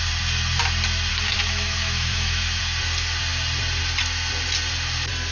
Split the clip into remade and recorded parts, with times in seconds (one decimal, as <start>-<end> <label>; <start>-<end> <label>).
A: 0.0-1.1 recorded; 1.1-2.6 remade; 2.6-5.3 recorded